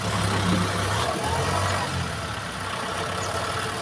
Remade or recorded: recorded